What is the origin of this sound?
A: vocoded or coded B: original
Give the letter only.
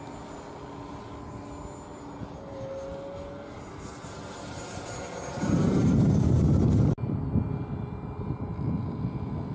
B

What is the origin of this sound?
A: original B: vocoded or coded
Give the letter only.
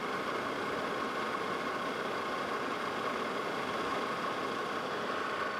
A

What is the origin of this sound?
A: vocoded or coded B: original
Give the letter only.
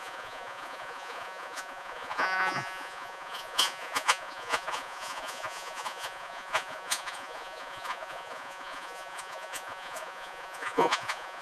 A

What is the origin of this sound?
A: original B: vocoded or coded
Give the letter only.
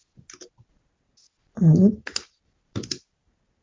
A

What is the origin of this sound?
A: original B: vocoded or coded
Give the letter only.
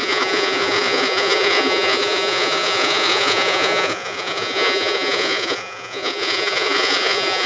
B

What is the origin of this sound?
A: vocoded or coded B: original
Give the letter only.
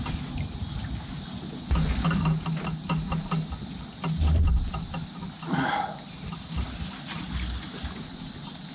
B